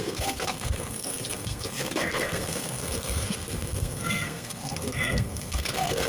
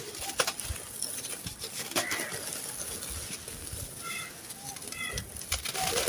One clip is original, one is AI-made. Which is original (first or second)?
second